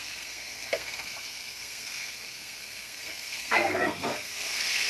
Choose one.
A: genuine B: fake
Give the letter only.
B